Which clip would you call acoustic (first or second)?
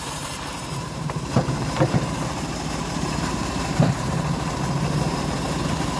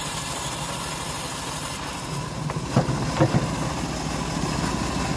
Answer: second